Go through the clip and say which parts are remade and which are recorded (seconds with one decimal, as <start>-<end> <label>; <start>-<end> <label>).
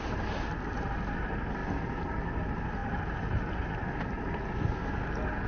0.0-5.5 recorded